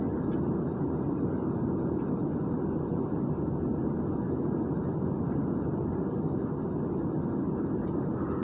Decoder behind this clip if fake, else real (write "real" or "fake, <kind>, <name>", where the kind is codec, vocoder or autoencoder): real